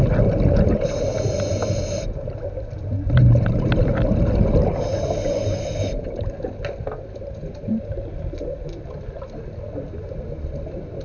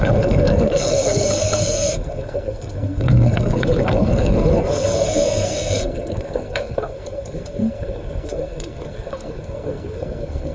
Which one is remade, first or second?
second